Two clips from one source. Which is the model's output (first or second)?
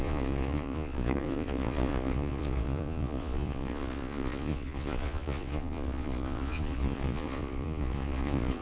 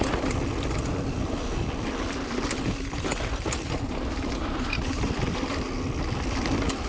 first